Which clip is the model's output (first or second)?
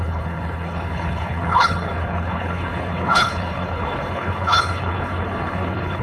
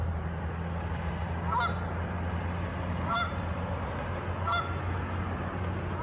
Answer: first